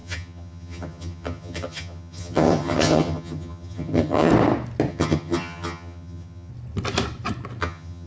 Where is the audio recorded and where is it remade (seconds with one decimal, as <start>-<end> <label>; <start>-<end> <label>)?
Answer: 0.0-4.3 remade; 4.3-4.9 recorded; 4.9-6.5 remade; 6.5-7.6 recorded; 7.6-8.1 remade